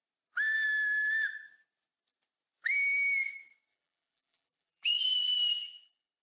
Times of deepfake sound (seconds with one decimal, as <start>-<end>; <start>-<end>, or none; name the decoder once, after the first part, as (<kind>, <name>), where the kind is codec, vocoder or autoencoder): 3.7-4.9 (vocoder, BigVGAN v2); 5.6-6.2